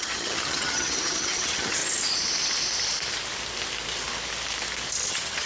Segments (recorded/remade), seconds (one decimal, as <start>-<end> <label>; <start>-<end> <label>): 0.0-1.8 remade; 1.8-5.1 recorded; 5.1-5.5 remade